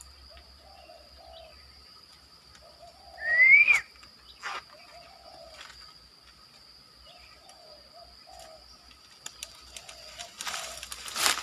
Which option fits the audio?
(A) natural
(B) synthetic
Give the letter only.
A